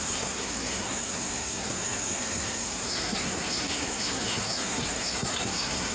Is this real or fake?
fake